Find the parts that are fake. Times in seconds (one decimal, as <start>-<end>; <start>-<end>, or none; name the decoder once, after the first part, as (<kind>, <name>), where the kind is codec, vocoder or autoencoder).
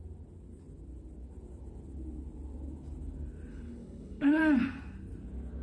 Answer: 3.5-4.4 (codec, HILCodec)